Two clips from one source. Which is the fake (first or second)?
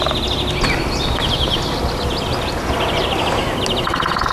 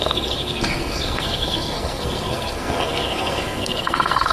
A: second